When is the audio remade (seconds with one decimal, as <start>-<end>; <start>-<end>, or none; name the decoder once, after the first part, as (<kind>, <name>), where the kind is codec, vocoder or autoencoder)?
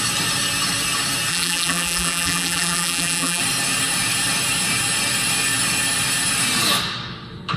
1.3-3.4 (vocoder, BigVGAN v2)